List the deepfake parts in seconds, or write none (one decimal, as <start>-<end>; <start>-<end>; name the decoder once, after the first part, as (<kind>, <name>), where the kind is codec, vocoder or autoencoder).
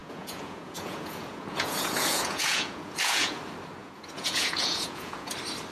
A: 0.0-3.4 (vocoder, Vocos); 3.8-5.3